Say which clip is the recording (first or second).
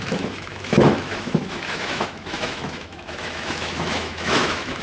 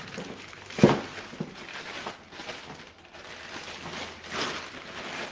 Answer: second